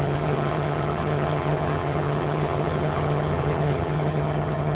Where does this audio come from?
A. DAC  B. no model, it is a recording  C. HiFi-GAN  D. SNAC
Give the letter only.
C